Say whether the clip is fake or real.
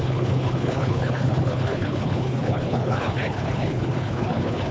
fake